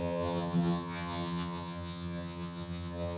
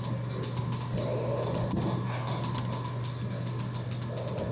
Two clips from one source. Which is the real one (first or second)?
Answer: second